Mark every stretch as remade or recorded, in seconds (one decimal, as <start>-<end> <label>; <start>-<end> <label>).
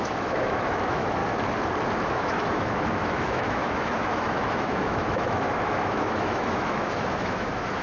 0.0-1.2 remade; 1.2-2.1 recorded; 2.1-7.8 remade